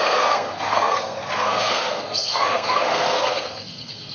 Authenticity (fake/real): fake